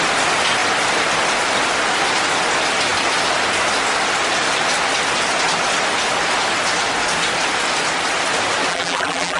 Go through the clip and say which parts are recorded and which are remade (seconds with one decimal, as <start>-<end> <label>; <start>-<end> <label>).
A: 0.0-8.7 recorded; 8.7-9.4 remade